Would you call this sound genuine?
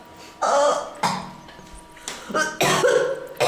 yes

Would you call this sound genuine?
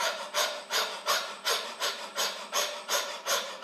no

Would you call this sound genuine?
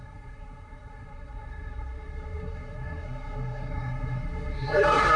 no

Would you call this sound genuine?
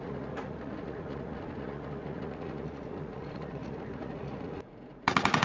no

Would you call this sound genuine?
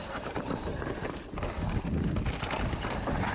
yes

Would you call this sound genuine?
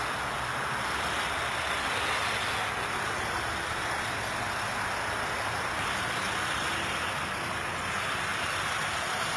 yes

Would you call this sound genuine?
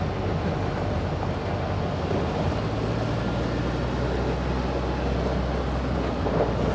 yes